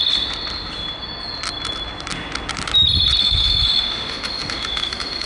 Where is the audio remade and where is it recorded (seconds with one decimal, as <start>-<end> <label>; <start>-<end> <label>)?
0.0-3.2 recorded; 3.2-5.3 remade